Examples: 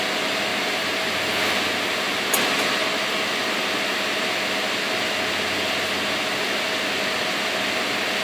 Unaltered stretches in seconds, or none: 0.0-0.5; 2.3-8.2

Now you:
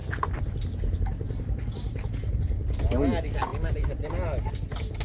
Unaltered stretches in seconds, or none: 0.0-5.0

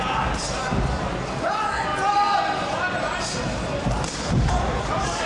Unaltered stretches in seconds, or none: 0.0-5.3

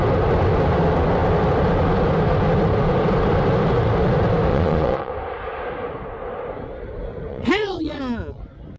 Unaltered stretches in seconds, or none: 0.0-4.5; 5.1-7.3; 8.0-8.8

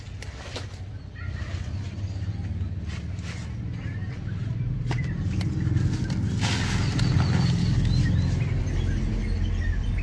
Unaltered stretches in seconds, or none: 0.0-4.0; 5.3-10.0

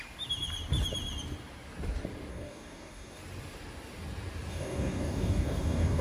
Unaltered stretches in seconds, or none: 0.0-2.3; 3.2-4.5

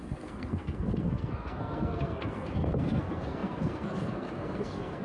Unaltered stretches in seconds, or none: none

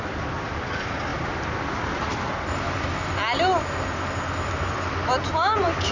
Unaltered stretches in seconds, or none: 0.0-5.9